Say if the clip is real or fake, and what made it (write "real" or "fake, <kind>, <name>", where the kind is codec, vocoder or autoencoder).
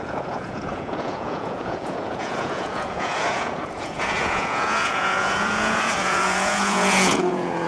fake, vocoder, Vocos